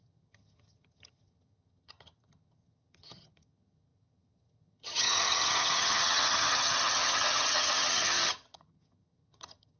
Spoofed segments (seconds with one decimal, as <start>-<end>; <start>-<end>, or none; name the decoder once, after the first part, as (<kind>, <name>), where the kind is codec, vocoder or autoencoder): 0.0-9.8 (vocoder, HiFi-GAN)

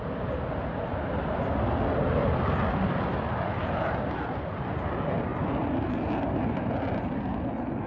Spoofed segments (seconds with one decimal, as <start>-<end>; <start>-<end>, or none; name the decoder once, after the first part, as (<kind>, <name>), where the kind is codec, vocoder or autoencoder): none